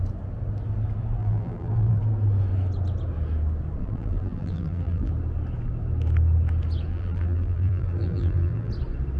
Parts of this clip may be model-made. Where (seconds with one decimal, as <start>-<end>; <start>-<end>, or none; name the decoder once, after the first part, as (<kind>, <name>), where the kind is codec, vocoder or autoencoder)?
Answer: 1.2-2.0 (vocoder, BigVGAN v2); 3.8-5.1; 6.9-8.7